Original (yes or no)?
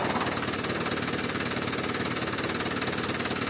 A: yes